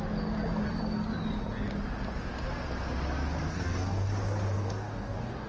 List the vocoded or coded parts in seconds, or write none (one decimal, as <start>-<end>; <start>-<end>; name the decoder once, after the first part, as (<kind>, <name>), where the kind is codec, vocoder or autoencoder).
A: 3.5-4.1 (codec, DAC); 4.6-5.5